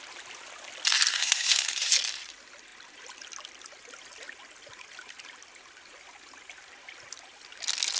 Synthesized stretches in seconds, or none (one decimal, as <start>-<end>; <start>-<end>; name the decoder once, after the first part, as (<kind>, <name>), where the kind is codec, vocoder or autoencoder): 1.1-1.9 (codec, SNAC)